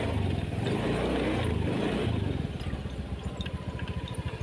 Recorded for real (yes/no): yes